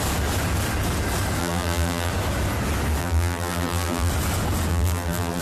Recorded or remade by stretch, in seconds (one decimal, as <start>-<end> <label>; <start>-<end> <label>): 0.0-1.4 recorded; 1.4-2.1 remade; 2.1-3.0 recorded; 3.0-4.1 remade; 4.1-4.7 recorded; 4.7-5.4 remade